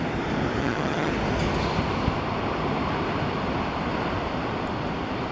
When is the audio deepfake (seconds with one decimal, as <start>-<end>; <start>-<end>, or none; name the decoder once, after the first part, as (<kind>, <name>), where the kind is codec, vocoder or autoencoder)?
0.6-1.1 (vocoder, HiFi-GAN)